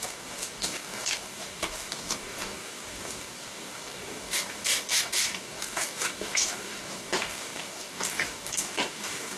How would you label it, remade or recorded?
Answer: remade